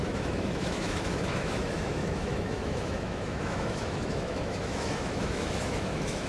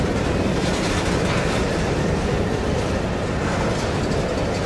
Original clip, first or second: second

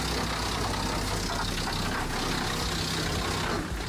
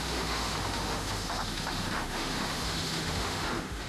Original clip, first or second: first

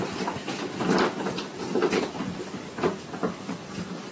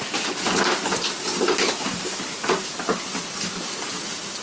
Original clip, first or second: second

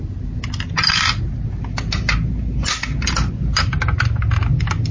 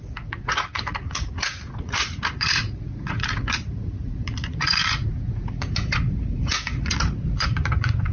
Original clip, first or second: first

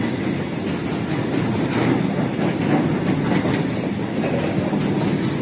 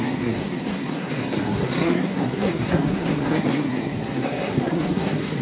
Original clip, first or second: first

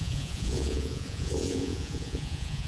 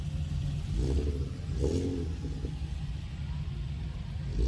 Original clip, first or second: second